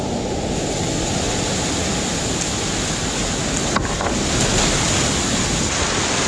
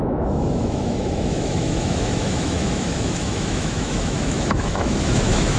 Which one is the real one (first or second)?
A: first